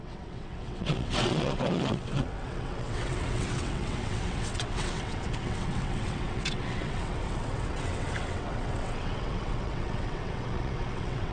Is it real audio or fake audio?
fake